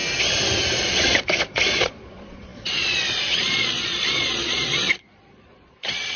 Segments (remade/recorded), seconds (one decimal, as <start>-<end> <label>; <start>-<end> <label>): 0.0-0.8 recorded; 0.8-6.2 remade

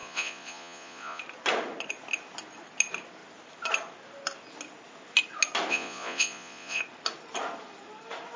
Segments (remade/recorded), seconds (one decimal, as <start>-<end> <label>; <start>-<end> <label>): 0.0-1.2 remade; 1.2-5.7 recorded; 5.7-6.8 remade; 6.8-8.4 recorded